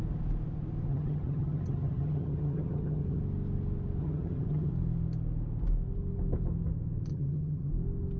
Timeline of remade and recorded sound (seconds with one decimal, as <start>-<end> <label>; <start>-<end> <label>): 0.0-0.9 recorded; 0.9-3.2 remade; 3.2-4.0 recorded; 4.0-4.7 remade; 4.7-7.1 recorded; 7.1-7.7 remade; 7.7-8.2 recorded